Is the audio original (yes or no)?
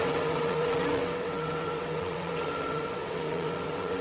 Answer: no